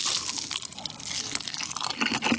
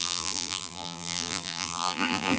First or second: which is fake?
second